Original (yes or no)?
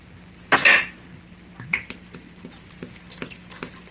yes